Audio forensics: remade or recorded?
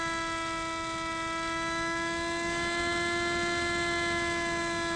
recorded